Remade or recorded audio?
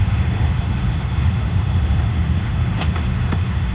remade